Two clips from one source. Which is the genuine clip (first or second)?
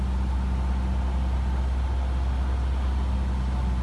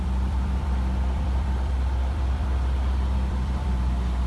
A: first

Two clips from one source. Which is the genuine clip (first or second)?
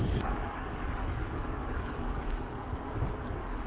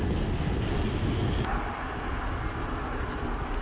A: second